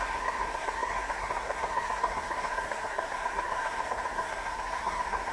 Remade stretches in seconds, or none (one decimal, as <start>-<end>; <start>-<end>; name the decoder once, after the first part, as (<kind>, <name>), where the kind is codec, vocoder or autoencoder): 0.0-5.3 (codec, SNAC)